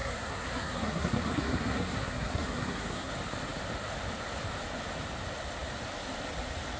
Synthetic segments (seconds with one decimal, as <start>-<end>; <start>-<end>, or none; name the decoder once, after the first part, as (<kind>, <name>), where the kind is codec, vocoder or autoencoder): 0.0-3.1 (codec, SNAC)